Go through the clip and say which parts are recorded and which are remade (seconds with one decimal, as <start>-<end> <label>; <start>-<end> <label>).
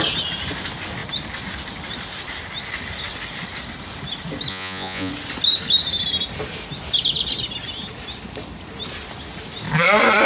0.0-4.5 recorded; 4.5-5.1 remade; 5.1-10.3 recorded